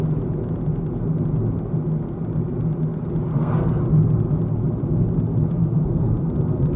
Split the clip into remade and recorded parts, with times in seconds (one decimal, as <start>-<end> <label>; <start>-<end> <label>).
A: 0.0-3.3 recorded; 3.3-3.8 remade; 3.8-5.5 recorded; 5.5-6.8 remade